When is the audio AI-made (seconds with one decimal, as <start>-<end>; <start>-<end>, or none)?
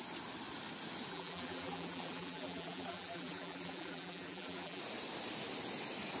1.1-4.8